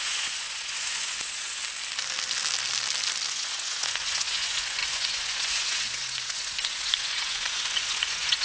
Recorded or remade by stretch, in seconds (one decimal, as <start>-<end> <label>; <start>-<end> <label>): 0.0-1.6 remade; 1.6-3.3 recorded; 3.3-8.4 remade